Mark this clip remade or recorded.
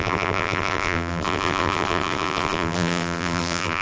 remade